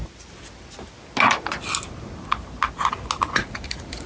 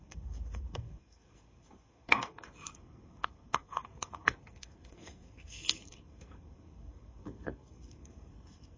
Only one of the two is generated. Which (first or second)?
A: second